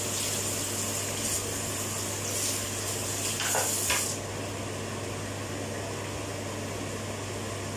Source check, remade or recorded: recorded